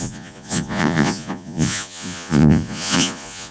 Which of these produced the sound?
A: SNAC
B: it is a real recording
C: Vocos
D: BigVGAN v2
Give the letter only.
C